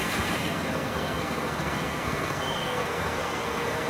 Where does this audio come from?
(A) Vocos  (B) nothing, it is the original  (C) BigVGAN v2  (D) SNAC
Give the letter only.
D